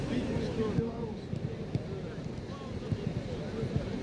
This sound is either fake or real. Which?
real